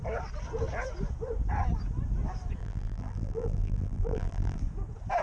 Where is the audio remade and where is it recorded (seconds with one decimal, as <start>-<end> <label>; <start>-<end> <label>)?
0.0-2.6 recorded; 2.6-4.6 remade; 4.6-5.2 recorded